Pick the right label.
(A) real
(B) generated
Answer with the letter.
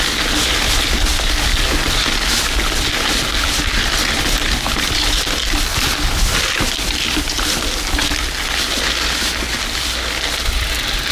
A